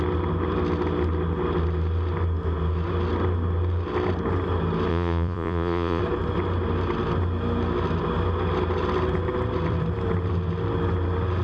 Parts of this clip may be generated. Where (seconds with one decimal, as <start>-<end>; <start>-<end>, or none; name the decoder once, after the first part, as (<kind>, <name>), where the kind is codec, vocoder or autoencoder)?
4.9-6.0 (vocoder, Vocos)